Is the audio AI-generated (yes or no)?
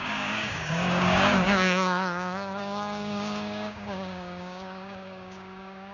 yes